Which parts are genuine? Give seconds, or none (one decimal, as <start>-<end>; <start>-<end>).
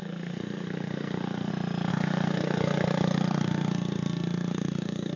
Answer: 1.5-1.9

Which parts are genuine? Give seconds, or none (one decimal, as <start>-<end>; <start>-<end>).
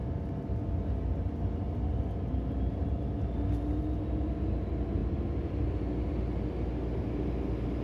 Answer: 0.0-5.0; 5.8-7.8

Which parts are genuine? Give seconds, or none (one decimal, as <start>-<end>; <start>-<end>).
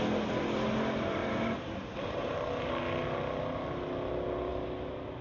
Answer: 0.0-1.2; 2.7-5.2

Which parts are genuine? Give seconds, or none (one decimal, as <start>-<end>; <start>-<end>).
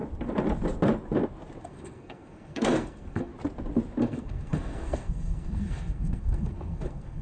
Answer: 0.0-1.6; 3.3-4.0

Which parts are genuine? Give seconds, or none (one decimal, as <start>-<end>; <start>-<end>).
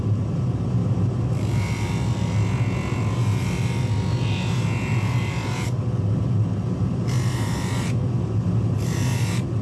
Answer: 0.0-9.6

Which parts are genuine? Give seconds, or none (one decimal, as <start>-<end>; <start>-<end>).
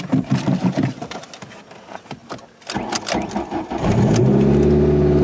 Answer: 0.0-5.2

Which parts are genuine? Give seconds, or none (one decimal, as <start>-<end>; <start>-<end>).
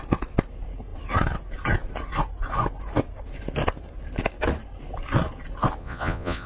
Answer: 0.0-5.8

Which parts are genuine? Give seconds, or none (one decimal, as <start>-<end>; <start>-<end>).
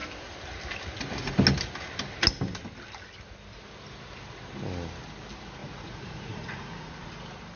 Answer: 0.0-5.6; 7.1-7.6